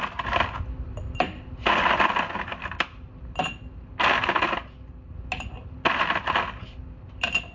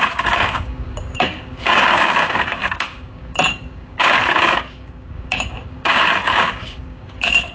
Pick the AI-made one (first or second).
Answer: second